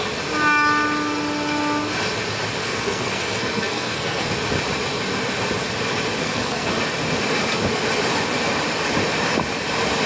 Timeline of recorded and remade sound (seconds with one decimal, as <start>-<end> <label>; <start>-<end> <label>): 0.0-2.6 recorded; 2.6-4.3 remade; 4.3-6.2 recorded; 6.2-6.7 remade; 6.7-10.1 recorded